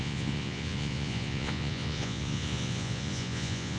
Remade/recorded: remade